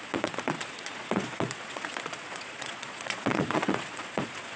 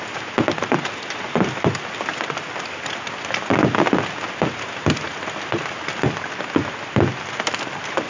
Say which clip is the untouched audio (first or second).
second